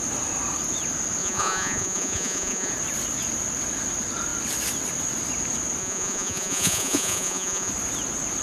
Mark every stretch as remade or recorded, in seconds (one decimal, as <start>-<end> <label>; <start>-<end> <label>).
0.0-1.2 recorded; 1.2-2.7 remade; 2.7-5.8 recorded; 5.8-7.7 remade; 7.7-8.4 recorded